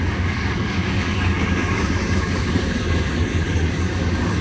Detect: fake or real fake